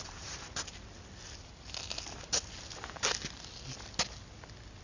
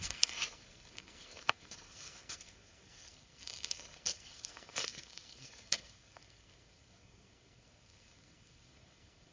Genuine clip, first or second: first